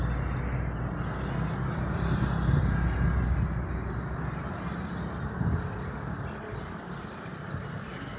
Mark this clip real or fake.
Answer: real